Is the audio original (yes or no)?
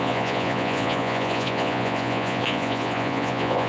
no